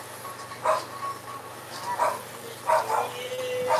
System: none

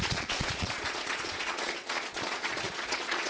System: vocoder, Vocos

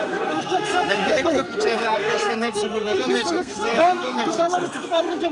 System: codec, SNAC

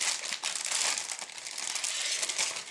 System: none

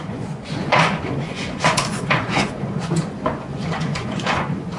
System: vocoder, Vocos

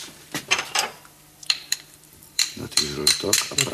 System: vocoder, BigVGAN v2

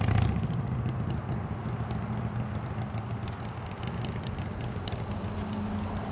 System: none